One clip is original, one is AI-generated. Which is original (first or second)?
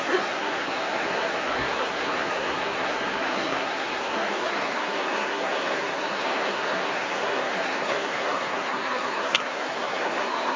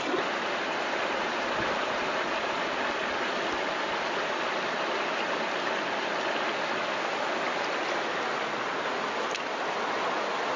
second